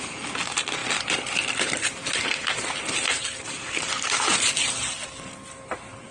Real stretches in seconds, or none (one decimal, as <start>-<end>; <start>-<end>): 0.0-0.8; 4.5-6.1